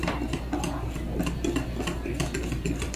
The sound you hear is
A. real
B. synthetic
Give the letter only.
A